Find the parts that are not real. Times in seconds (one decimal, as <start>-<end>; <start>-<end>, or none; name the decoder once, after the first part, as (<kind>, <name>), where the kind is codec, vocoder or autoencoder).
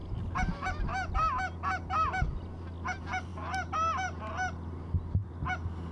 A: none